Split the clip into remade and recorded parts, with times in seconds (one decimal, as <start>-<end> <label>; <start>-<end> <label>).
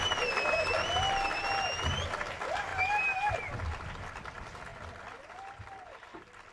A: 0.0-6.5 recorded